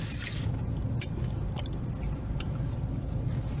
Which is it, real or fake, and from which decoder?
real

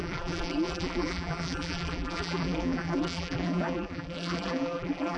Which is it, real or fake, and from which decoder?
fake, vocoder, BigVGAN v2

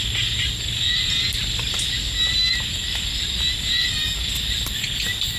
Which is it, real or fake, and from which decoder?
real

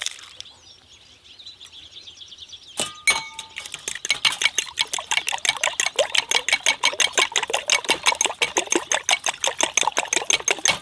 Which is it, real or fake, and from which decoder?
real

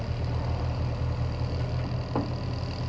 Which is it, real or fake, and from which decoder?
real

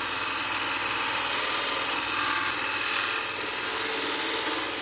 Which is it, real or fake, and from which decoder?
real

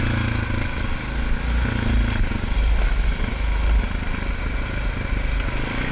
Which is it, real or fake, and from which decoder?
real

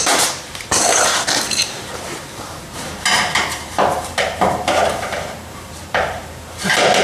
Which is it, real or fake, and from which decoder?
fake, vocoder, BigVGAN v2